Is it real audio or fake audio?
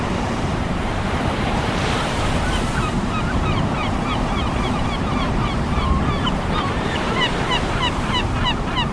fake